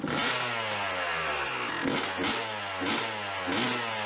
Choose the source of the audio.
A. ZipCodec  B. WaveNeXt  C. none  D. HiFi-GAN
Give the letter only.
C